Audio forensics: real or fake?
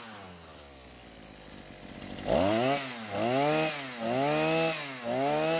real